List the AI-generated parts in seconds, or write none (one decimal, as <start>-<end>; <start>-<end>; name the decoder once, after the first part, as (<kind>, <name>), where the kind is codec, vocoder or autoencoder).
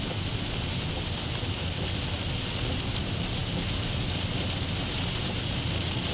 none